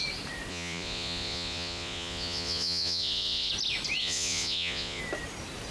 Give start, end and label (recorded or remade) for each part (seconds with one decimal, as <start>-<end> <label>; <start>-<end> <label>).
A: 0.0-0.5 recorded; 0.5-3.5 remade; 3.5-4.0 recorded; 4.0-5.0 remade; 5.0-5.7 recorded